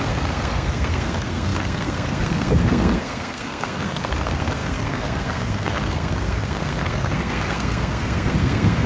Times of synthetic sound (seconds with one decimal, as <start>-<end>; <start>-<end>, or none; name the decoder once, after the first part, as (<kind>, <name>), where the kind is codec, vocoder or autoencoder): 0.0-8.9 (codec, SNAC)